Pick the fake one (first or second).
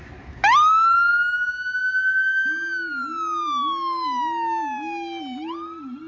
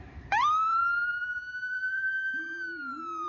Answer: second